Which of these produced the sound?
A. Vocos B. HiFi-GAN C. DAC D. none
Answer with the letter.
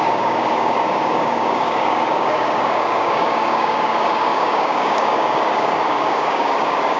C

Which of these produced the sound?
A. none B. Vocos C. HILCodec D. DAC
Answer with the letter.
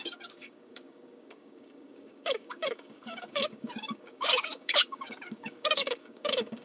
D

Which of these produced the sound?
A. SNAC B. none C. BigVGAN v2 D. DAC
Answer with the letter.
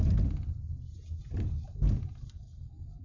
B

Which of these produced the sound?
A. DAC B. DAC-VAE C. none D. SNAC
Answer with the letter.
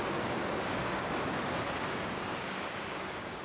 A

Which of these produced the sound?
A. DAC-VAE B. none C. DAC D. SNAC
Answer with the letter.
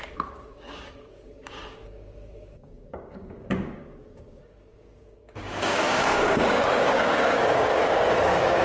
C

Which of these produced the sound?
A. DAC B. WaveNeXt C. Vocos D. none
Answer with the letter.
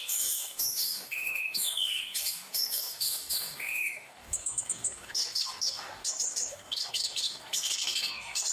A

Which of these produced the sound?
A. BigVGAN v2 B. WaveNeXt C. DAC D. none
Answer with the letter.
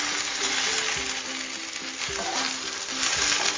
D